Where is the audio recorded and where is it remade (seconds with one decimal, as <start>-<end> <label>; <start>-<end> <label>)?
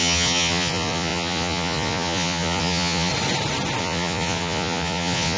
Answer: 0.0-3.1 remade; 3.1-3.8 recorded; 3.8-5.4 remade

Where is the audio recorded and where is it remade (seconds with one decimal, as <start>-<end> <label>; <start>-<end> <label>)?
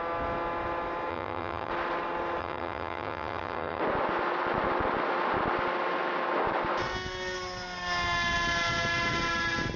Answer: 0.0-1.1 recorded; 1.1-1.7 remade; 1.7-2.4 recorded; 2.4-3.8 remade; 3.8-9.8 recorded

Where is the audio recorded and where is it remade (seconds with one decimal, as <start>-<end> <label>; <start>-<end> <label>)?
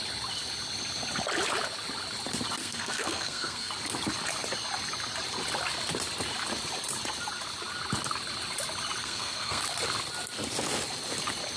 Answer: 0.0-2.6 recorded; 2.6-3.7 remade; 3.7-9.0 recorded; 9.0-9.6 remade; 9.6-11.6 recorded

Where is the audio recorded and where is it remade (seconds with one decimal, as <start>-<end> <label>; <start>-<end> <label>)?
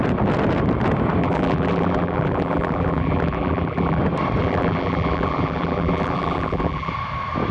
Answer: 0.0-1.2 recorded; 1.2-4.0 remade; 4.0-4.4 recorded; 4.4-6.9 remade; 6.9-7.5 recorded